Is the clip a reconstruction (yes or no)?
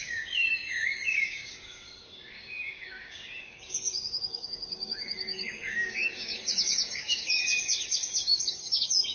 yes